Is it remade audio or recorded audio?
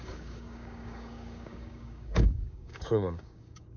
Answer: remade